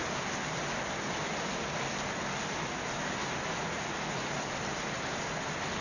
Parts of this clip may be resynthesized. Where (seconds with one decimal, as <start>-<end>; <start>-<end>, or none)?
3.5-4.4